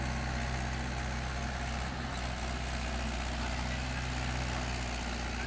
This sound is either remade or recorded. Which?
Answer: recorded